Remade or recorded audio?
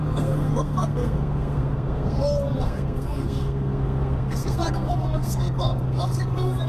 remade